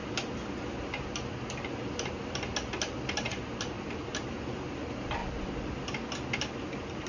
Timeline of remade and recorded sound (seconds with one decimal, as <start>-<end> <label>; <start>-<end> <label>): 0.0-7.1 recorded